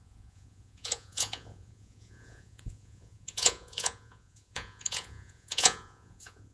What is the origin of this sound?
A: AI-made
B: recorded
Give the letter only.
A